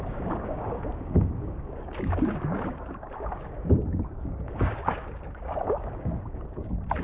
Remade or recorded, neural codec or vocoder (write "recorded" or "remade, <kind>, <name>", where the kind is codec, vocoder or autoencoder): remade, codec, DAC